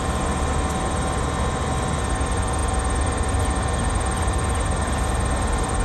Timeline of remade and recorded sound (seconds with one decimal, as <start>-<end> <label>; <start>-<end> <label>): 0.0-5.8 recorded